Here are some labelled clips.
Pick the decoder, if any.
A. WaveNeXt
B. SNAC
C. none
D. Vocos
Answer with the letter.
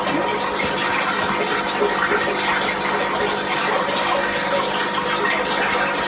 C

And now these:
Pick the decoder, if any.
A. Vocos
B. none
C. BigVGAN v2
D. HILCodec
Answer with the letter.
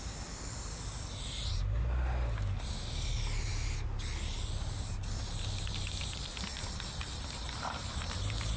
B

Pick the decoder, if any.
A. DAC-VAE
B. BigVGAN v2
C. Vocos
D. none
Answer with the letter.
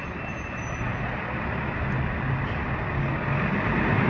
D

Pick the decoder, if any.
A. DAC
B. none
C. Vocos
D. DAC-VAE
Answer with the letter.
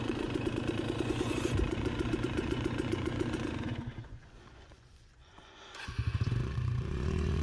C